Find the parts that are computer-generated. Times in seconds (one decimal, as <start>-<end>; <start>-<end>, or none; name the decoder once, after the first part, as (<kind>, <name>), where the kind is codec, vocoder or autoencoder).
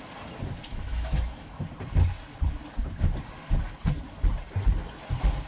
0.7-1.6 (autoencoder, DAC-VAE)